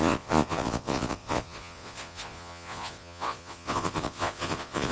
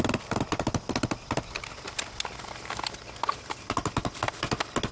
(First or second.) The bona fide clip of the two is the second